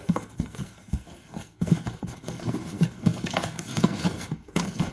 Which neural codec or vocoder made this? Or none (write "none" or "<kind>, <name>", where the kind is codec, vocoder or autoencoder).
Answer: codec, SNAC